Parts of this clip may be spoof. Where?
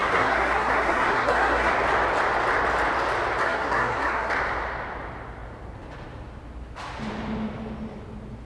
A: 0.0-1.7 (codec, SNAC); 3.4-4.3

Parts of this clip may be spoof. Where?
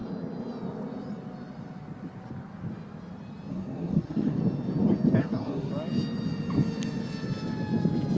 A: 3.5-4.4 (codec, SNAC); 5.2-5.7